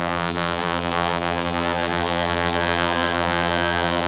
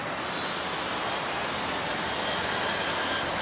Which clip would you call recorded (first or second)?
second